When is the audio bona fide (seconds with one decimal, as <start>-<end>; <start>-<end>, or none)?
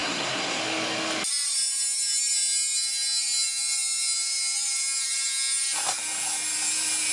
0.6-7.1